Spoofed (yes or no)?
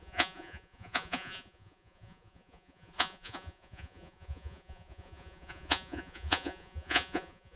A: yes